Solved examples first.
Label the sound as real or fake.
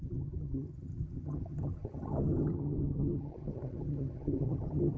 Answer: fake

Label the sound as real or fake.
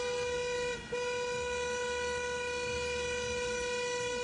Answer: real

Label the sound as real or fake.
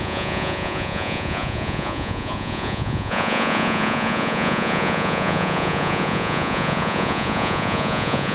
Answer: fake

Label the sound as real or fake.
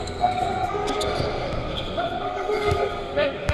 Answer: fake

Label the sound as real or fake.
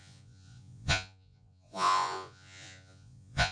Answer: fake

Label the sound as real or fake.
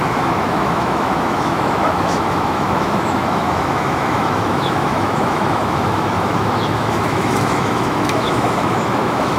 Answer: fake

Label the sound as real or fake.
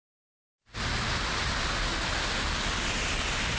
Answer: real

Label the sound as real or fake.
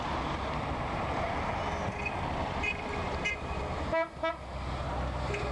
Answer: real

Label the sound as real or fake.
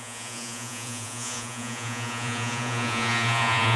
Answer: fake